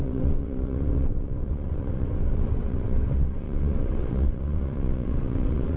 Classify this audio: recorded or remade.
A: remade